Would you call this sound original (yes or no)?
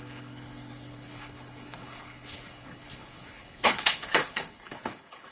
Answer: no